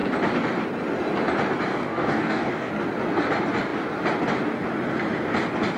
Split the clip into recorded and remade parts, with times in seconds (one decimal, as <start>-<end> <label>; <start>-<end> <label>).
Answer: 0.0-1.7 recorded; 1.7-2.7 remade; 2.7-5.8 recorded